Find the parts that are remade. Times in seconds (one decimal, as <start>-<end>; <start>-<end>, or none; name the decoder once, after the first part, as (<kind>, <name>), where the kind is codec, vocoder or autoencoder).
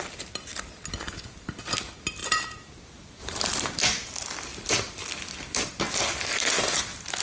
2.2-2.8 (vocoder, BigVGAN v2); 3.2-3.8